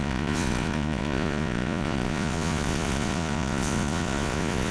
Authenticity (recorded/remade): remade